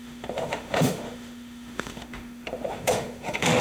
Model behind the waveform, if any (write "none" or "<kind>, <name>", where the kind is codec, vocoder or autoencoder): autoencoder, DAC-VAE